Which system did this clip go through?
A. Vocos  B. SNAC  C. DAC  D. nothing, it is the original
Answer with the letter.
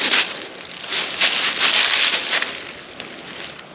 D